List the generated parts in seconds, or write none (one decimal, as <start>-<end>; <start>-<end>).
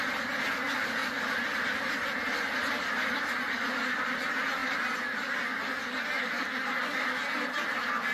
none